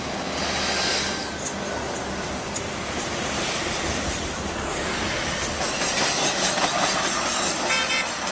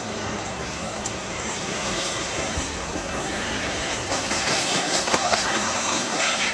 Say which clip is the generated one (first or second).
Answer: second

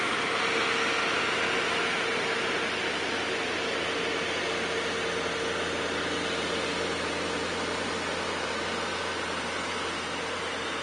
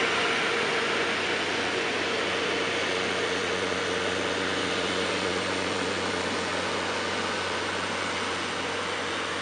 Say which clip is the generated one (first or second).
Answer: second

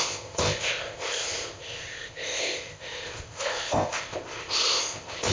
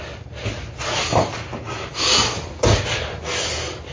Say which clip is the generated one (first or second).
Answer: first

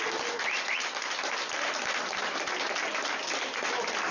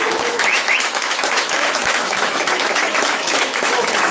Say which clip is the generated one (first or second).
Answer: second